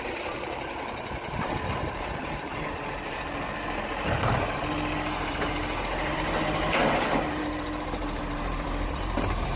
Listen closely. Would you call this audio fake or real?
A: fake